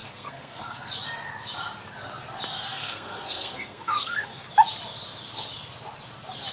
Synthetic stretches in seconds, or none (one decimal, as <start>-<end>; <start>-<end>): 0.0-0.9; 2.7-4.5